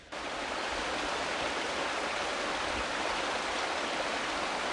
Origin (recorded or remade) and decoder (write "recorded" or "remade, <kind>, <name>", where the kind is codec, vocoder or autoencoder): recorded